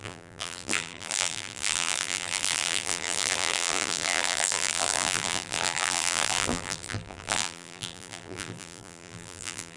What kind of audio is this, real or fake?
fake